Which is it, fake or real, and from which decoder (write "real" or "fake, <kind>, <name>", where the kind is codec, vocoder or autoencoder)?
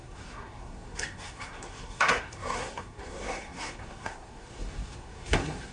fake, codec, SNAC